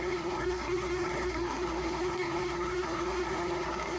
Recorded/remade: remade